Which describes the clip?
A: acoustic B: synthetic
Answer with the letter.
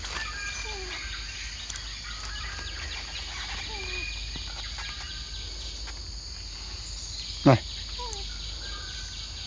A